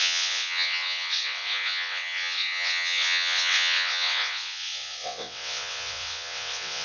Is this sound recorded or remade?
remade